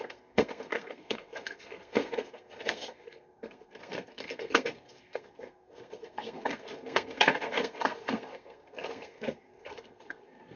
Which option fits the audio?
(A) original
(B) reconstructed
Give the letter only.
B